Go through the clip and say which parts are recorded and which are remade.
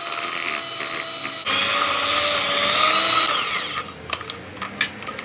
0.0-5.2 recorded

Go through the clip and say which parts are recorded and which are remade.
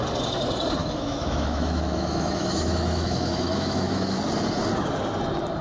0.0-0.8 recorded; 0.8-4.2 remade; 4.2-5.6 recorded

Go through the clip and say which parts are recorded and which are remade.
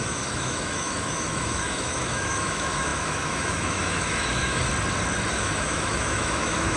0.0-4.7 remade; 4.7-5.3 recorded; 5.3-6.8 remade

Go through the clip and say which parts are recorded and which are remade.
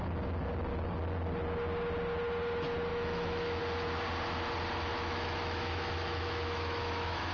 0.0-2.9 recorded; 2.9-3.6 remade; 3.6-4.9 recorded; 4.9-7.3 remade